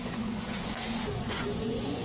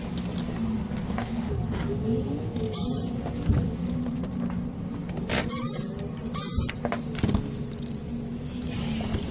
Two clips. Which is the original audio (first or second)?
second